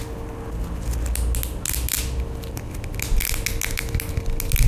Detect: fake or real real